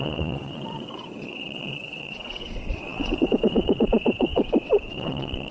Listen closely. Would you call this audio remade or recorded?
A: remade